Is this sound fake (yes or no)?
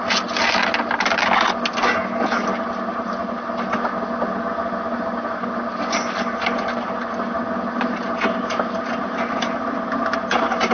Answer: no